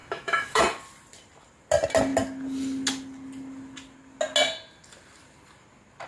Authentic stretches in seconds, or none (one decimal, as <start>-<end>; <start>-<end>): 0.6-6.1